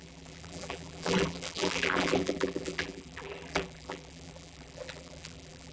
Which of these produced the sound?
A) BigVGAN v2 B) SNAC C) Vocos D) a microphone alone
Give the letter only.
A